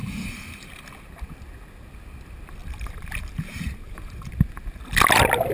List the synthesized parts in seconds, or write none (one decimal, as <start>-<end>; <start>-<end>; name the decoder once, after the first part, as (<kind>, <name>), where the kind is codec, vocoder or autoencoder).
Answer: 0.0-0.8 (vocoder, BigVGAN v2); 2.6-4.3